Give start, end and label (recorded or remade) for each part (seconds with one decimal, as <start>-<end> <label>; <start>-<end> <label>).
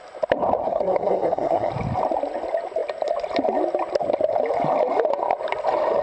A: 0.0-0.6 recorded; 0.6-1.7 remade; 1.7-6.0 recorded